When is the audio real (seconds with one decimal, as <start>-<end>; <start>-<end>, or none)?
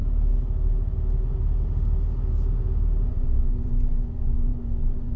0.0-3.1